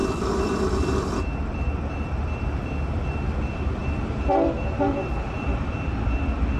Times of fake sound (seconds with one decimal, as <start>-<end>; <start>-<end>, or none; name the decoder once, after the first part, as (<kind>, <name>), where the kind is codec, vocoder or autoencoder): 0.0-6.6 (vocoder, BigVGAN v2)